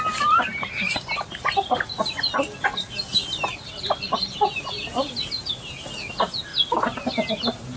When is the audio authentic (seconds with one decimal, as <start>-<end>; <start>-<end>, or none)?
0.0-7.8

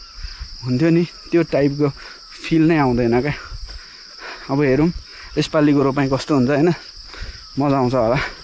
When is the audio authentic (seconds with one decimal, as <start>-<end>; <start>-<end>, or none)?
0.0-8.4